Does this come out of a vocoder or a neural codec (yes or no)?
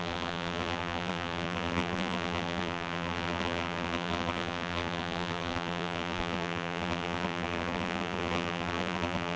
yes